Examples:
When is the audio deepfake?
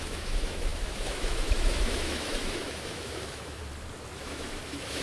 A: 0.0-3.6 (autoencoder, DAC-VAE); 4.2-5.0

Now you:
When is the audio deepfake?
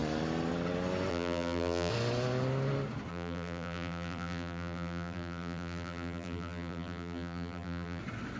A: 1.1-1.9 (vocoder, BigVGAN v2); 3.1-8.0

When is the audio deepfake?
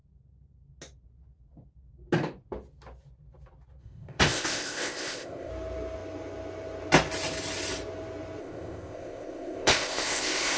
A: 3.8-5.5 (codec, ZipCodec); 8.4-10.6